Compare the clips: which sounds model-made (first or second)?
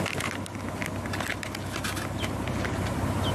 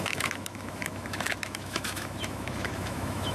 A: second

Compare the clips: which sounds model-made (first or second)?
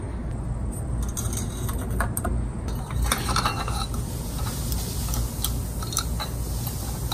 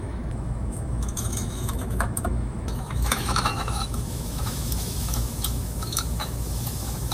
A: second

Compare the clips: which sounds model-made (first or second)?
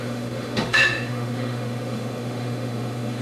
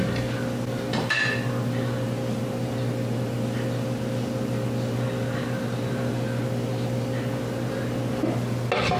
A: first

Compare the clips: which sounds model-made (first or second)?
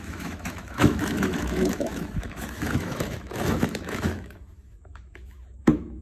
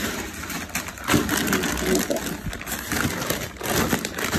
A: first